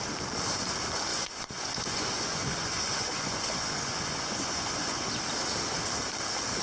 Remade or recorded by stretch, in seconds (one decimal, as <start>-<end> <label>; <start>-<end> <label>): 0.0-1.1 recorded; 1.1-5.1 remade; 5.1-6.6 recorded